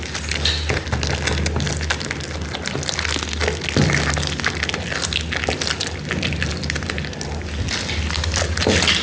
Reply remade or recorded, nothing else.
recorded